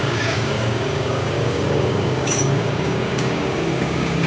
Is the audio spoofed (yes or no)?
yes